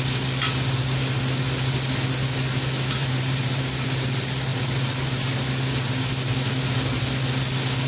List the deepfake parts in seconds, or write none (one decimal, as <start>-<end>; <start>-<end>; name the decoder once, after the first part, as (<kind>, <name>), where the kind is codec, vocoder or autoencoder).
3.0-3.6 (vocoder, BigVGAN v2)